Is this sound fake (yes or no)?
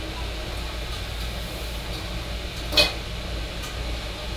no